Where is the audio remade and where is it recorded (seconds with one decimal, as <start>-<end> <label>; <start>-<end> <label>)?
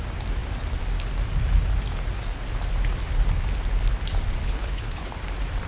0.0-4.4 recorded; 4.4-5.1 remade; 5.1-5.7 recorded